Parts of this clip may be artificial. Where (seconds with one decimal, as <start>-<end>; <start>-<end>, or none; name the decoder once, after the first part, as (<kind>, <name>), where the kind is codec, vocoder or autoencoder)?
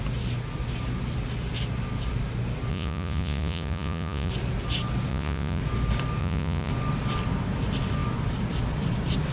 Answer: 2.7-4.3 (vocoder, Vocos); 5.1-5.6; 6.2-6.7